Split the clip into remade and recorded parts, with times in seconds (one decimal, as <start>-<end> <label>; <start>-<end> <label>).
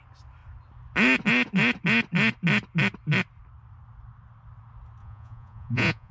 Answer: 0.0-5.0 recorded; 5.0-6.1 remade